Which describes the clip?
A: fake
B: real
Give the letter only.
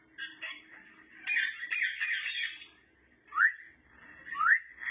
A